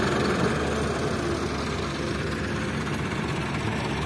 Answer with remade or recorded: recorded